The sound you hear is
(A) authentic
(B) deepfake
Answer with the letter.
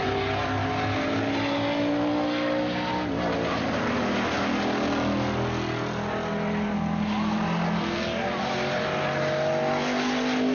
A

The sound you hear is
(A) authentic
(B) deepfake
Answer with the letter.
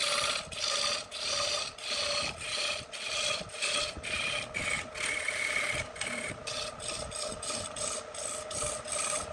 A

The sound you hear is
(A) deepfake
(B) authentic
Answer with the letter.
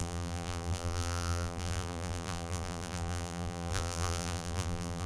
A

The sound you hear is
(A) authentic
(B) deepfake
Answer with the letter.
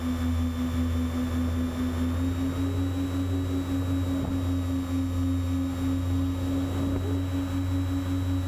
A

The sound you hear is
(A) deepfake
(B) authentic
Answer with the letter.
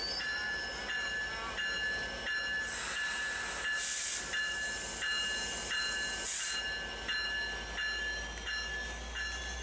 B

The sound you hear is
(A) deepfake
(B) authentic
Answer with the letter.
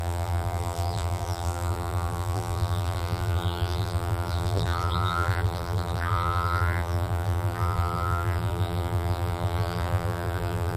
A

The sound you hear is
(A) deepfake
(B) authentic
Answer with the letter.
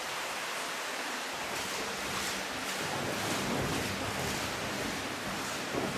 B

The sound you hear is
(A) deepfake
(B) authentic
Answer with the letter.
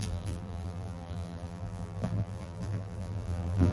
A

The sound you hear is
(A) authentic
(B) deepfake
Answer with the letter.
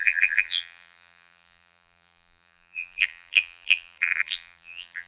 B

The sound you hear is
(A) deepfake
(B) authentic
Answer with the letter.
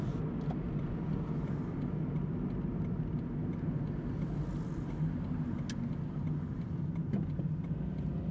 B